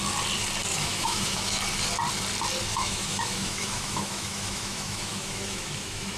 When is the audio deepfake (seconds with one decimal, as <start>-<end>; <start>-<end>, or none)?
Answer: 0.7-1.6; 2.7-6.2